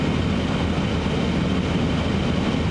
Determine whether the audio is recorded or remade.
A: recorded